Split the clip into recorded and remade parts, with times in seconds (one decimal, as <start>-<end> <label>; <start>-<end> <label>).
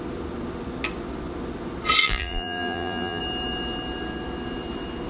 0.0-2.0 recorded; 2.0-3.2 remade; 3.2-5.1 recorded